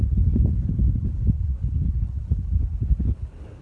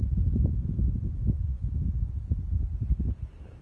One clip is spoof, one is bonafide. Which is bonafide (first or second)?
second